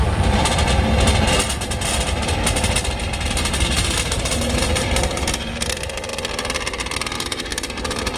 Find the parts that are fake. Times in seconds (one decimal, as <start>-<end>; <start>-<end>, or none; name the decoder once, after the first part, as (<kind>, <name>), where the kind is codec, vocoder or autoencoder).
0.0-6.1 (vocoder, BigVGAN v2); 6.8-8.2